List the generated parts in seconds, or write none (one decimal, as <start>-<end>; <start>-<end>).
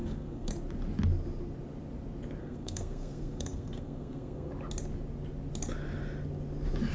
0.0-0.5; 2.4-4.5